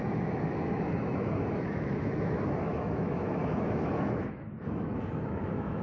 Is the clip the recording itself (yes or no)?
no